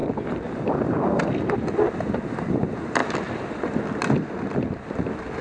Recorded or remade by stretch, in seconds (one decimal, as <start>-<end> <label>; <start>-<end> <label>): 0.0-5.4 recorded